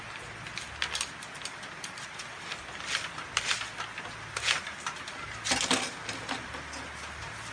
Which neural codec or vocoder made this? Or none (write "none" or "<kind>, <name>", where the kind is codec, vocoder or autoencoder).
none